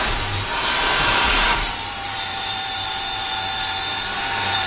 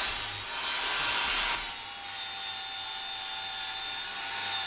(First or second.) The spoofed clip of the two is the first